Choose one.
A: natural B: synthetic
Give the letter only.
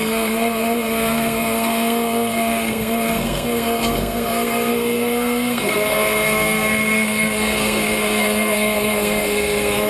B